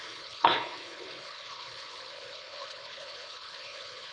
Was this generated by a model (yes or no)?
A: yes